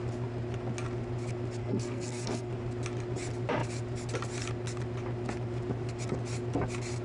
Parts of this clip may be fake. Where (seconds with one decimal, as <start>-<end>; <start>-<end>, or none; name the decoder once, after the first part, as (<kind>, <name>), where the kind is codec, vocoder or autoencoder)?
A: 1.6-2.5 (codec, SNAC)